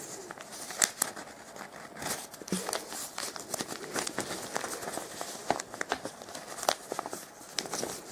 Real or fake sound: real